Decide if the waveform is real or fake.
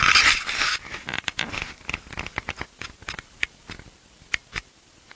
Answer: real